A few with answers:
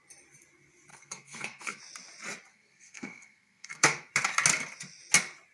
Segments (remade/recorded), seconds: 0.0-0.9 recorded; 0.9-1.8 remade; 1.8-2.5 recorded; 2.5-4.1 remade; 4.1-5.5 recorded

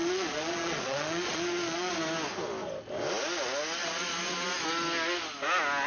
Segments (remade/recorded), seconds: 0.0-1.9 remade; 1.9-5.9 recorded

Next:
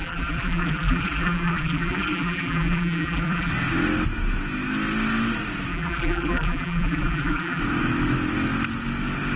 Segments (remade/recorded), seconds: 0.0-3.5 remade; 3.5-5.7 recorded; 5.7-7.6 remade; 7.6-9.4 recorded

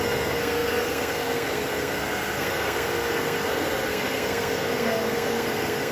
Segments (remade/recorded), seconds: 0.0-5.9 remade

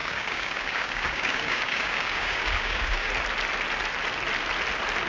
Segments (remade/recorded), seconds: 0.0-3.1 remade; 3.1-5.1 recorded

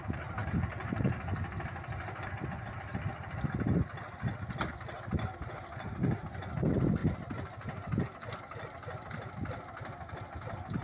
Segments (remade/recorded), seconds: 0.0-10.8 recorded